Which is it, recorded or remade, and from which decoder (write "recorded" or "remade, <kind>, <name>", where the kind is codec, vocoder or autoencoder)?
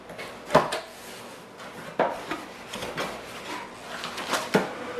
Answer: recorded